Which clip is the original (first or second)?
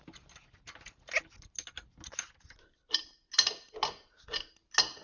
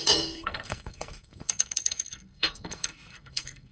first